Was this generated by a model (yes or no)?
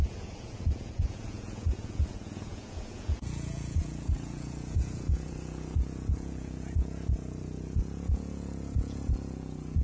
yes